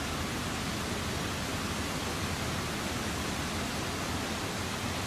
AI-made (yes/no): no